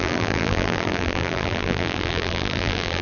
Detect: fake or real fake